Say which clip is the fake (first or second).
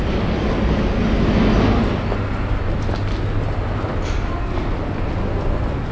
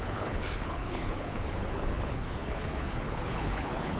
second